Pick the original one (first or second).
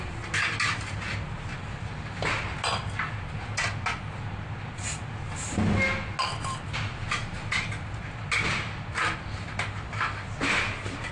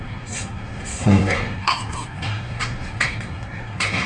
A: first